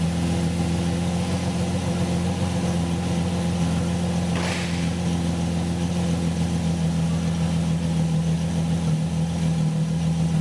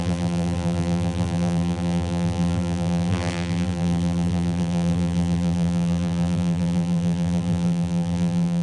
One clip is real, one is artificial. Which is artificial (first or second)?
second